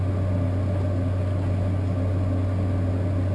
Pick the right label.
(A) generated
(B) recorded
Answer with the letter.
B